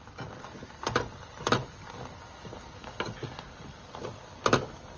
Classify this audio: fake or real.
real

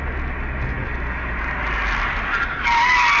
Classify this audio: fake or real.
real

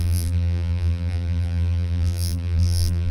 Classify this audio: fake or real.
fake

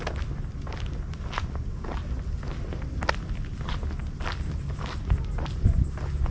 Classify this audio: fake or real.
real